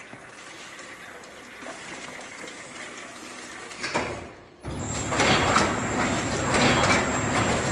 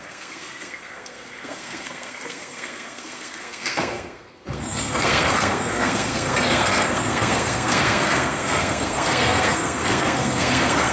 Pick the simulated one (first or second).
second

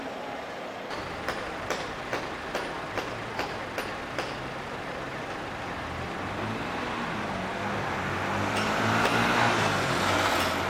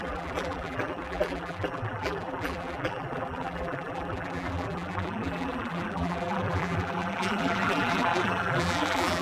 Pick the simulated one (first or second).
second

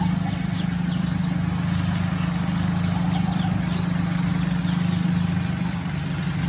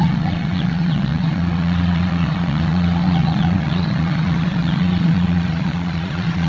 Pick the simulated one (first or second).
second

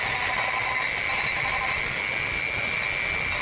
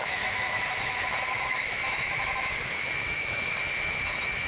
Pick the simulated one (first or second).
second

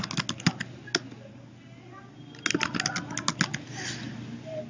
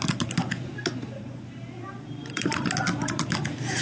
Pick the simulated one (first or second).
second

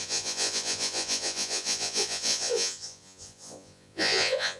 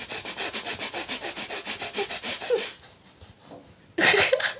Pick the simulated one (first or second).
first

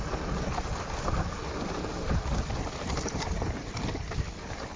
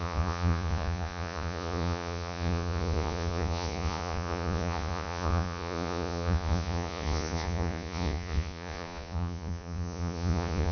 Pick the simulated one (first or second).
second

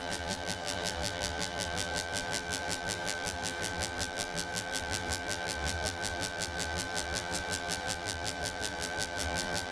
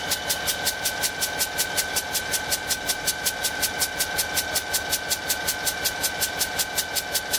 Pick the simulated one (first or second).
first